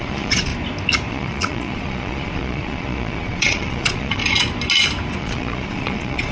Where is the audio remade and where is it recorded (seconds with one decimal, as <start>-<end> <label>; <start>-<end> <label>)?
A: 0.0-0.5 remade; 0.5-1.1 recorded; 1.1-4.2 remade; 4.2-5.2 recorded; 5.2-6.3 remade